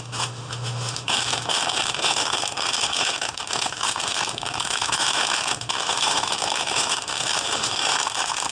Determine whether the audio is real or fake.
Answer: fake